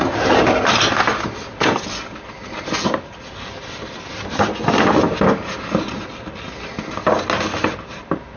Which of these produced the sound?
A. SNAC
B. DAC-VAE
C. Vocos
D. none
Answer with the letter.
D